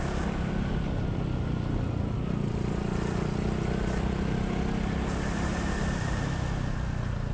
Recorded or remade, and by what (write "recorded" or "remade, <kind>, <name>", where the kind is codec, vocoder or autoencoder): recorded